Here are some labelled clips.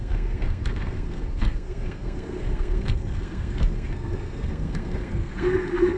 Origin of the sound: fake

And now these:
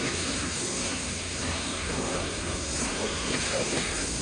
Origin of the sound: fake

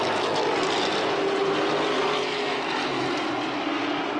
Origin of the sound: real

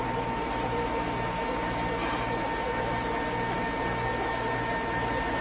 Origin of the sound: real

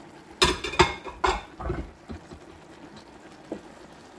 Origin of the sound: real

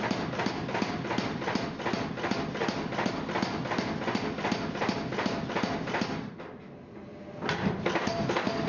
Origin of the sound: real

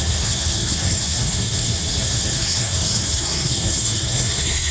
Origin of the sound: fake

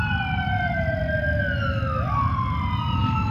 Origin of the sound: real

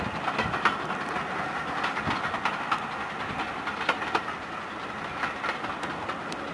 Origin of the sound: real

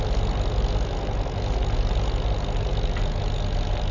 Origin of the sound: real